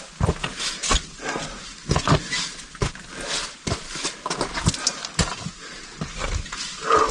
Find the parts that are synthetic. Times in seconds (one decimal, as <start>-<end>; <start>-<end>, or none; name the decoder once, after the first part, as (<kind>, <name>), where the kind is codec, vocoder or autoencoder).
1.8-5.0 (vocoder, BigVGAN v2)